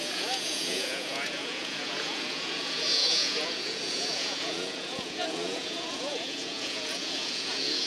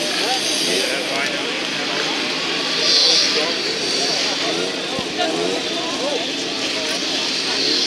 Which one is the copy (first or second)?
first